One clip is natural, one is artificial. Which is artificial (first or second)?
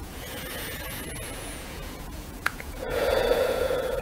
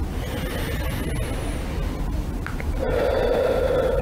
first